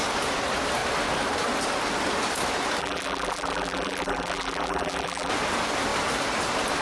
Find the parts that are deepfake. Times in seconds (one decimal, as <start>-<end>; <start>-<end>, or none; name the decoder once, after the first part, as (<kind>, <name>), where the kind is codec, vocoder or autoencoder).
2.8-5.3 (vocoder, BigVGAN v2)